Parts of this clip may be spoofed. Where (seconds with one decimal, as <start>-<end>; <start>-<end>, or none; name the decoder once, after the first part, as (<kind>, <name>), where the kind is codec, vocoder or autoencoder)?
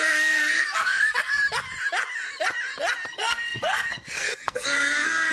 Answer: 0.0-1.4 (codec, SNAC); 3.1-5.3